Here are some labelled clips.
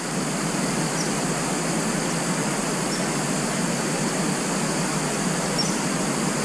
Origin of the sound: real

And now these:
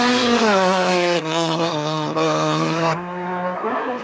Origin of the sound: fake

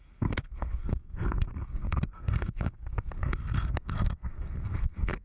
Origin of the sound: fake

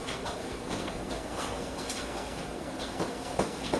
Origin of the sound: fake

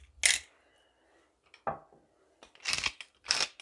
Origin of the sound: real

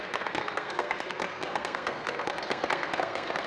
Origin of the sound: fake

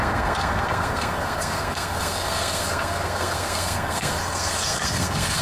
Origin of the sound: fake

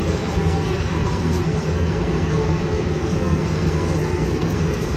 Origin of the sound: fake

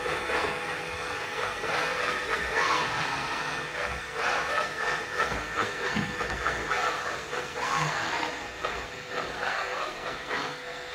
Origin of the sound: fake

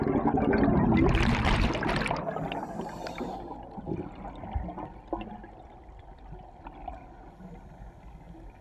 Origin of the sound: real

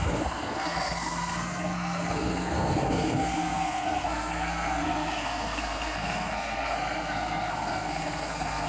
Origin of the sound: fake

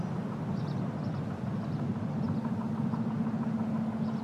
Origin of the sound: real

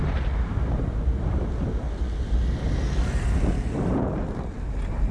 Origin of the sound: real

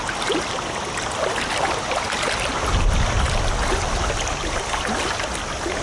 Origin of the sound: real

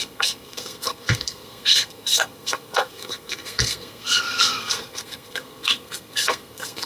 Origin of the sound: fake